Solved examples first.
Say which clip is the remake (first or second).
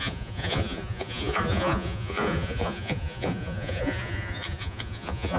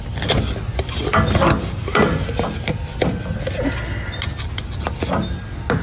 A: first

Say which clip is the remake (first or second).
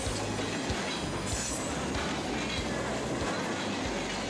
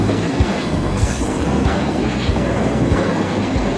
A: second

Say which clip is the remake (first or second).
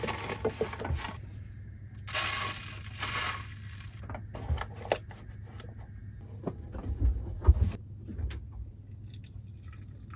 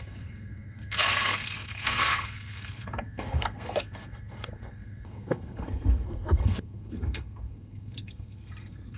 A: second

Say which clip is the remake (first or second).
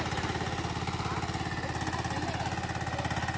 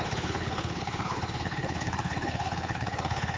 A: second